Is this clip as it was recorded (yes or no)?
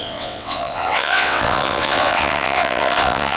no